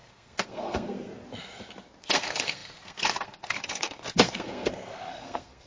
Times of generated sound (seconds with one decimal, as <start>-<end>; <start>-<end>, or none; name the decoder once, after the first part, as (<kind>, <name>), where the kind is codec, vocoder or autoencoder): 0.0-1.1 (codec, SNAC); 2.0-5.7